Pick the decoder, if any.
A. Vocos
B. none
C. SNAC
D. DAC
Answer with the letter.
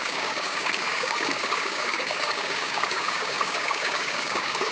D